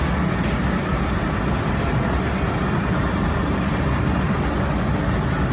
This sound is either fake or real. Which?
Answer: real